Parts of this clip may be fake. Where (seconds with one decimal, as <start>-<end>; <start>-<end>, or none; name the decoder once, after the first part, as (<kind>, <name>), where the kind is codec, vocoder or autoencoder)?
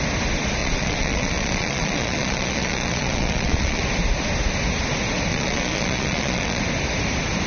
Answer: 0.6-3.8 (vocoder, Vocos); 5.3-6.6